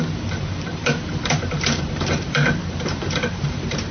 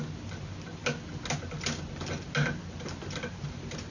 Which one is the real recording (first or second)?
second